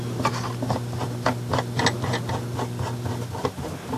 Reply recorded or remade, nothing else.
recorded